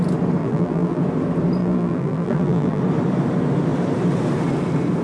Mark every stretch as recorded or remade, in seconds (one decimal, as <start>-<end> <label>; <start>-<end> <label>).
0.0-0.4 recorded; 0.4-1.0 remade; 1.0-1.6 recorded; 1.6-2.8 remade; 2.8-5.0 recorded